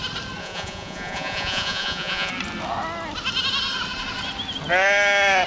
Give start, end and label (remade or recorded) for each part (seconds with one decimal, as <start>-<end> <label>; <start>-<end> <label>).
0.0-0.4 recorded; 0.4-2.3 remade; 2.3-5.5 recorded